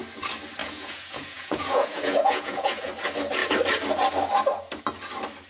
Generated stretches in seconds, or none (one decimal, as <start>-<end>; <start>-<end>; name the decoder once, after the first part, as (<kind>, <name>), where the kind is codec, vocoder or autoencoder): 0.6-2.9 (vocoder, Vocos)